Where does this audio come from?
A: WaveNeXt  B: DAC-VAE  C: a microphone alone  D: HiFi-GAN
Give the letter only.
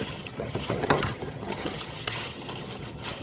D